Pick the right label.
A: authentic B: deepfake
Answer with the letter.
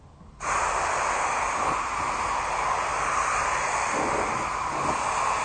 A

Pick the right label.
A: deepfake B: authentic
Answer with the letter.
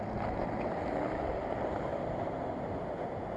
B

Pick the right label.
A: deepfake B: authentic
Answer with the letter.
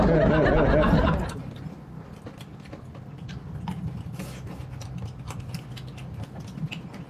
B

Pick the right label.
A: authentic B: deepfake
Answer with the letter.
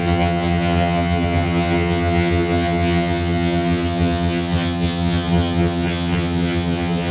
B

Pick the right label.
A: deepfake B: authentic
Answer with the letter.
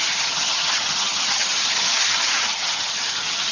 A